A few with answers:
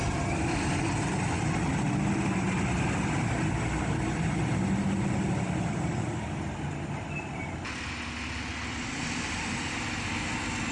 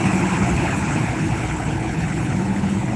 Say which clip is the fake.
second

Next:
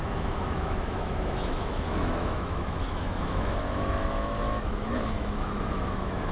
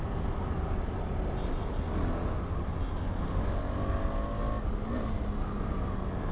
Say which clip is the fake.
first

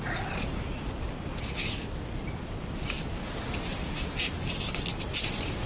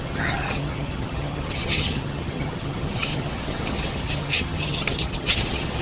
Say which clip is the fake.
second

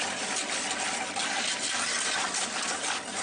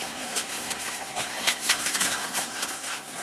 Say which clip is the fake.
second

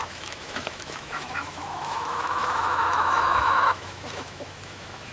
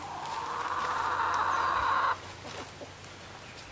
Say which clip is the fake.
first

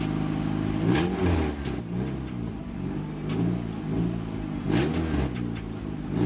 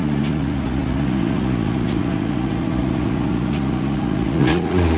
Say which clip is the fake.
second